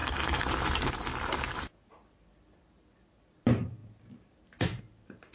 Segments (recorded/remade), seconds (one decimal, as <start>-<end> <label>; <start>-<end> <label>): 0.0-0.5 remade; 0.5-5.3 recorded